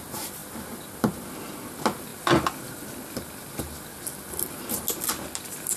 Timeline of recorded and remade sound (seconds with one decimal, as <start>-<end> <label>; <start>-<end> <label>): 0.0-5.8 recorded